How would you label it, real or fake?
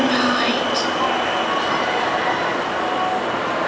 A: real